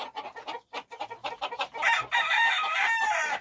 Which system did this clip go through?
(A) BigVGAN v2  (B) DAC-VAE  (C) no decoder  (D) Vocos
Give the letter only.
C